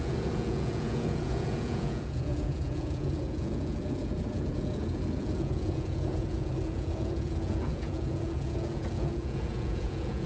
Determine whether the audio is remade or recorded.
remade